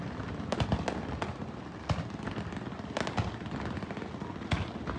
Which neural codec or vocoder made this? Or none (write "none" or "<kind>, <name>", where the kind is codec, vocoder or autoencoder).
none